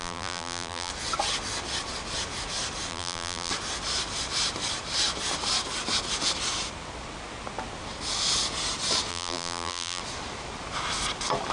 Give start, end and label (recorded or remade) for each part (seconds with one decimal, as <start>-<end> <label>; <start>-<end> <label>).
0.0-0.9 remade; 0.9-2.9 recorded; 2.9-3.5 remade; 3.5-9.1 recorded; 9.1-10.0 remade; 10.0-11.5 recorded